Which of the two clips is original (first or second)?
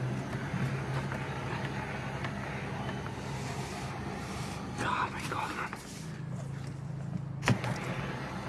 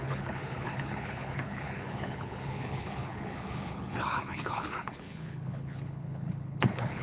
first